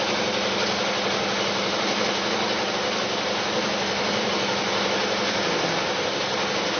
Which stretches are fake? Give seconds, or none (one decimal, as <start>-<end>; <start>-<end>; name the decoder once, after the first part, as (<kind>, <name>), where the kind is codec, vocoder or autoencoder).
none